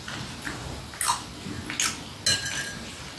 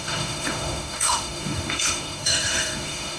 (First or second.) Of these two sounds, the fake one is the second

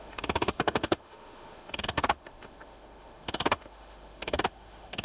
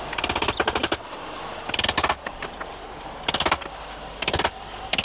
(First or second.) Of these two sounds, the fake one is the first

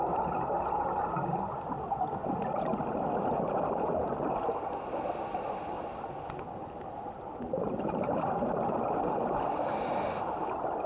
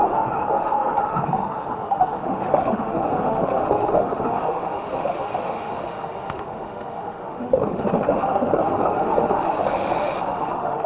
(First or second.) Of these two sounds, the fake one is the second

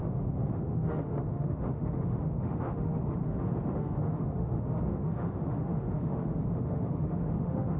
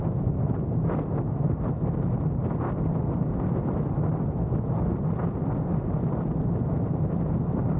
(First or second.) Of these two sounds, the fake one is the first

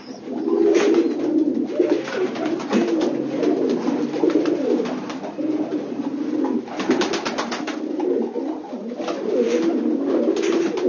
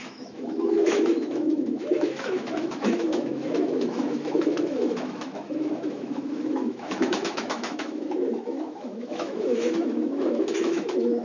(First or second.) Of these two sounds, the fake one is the second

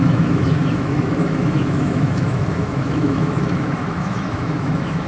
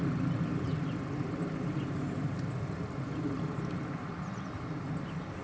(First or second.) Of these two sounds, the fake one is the first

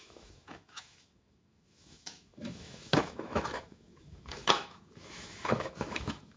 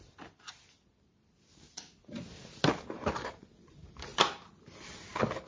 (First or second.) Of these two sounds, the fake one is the first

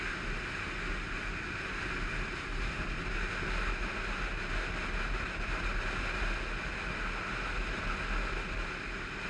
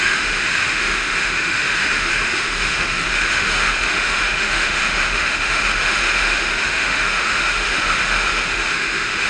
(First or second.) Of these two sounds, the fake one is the second